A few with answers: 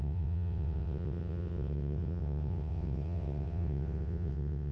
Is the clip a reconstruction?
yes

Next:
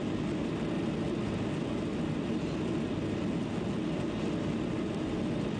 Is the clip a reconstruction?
no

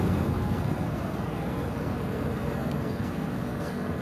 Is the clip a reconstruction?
yes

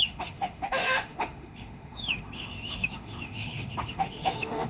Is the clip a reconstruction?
yes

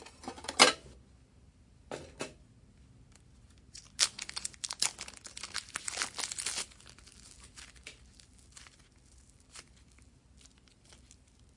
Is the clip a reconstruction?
no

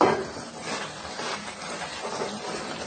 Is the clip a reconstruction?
yes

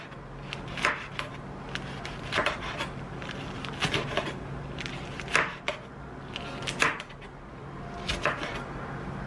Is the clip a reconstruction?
no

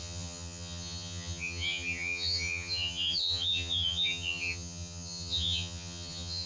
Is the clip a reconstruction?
yes